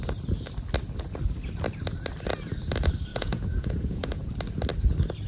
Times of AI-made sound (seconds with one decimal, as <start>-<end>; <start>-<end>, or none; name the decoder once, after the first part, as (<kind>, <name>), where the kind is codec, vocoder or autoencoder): 3.1-4.3 (vocoder, Vocos)